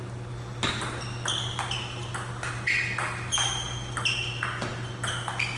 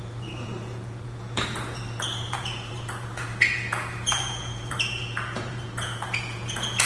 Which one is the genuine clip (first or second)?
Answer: first